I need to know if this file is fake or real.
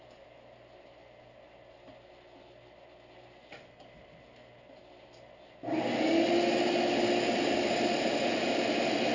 real